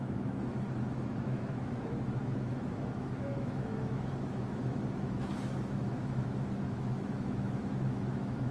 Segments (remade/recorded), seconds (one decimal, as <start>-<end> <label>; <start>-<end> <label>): 0.0-8.5 remade

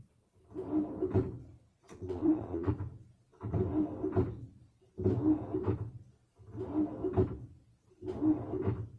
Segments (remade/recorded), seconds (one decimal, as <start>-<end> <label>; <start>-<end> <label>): 0.0-1.7 recorded; 1.7-2.7 remade; 2.7-9.0 recorded